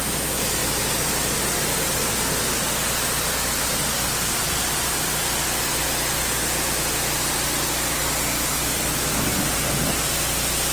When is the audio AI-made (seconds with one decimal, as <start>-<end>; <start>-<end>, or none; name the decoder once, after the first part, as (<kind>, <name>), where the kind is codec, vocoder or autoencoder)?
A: none